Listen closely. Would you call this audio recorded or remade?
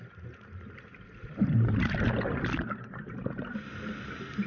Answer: recorded